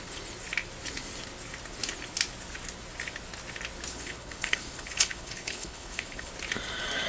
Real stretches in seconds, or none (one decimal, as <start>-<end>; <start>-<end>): 0.0-3.9; 6.3-7.1